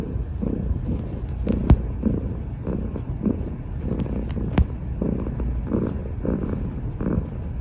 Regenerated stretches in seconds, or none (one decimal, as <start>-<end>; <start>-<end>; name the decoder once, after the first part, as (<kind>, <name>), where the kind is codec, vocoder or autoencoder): none